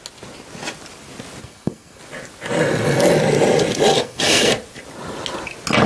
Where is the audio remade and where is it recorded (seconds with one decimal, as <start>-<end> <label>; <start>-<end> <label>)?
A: 0.0-1.4 recorded; 1.4-2.0 remade; 2.0-3.9 recorded; 3.9-4.5 remade; 4.5-5.9 recorded